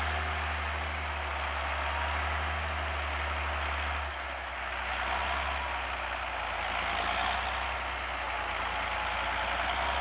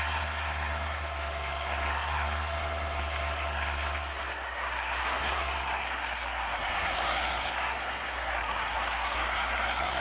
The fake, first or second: second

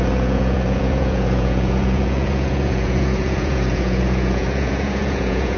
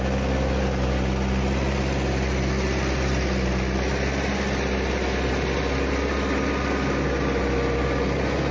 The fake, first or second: first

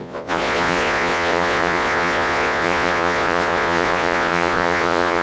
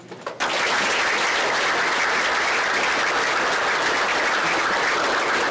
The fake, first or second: first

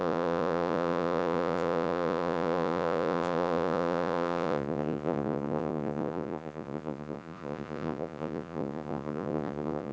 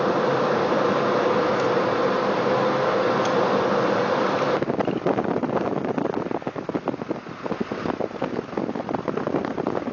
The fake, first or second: first